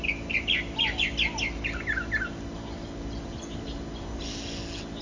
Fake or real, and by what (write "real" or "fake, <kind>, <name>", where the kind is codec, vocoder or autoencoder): real